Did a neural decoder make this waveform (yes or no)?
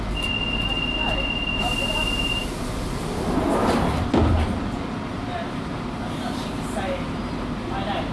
no